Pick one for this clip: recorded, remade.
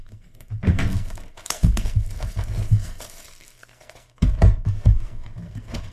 remade